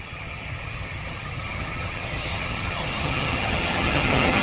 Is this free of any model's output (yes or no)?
no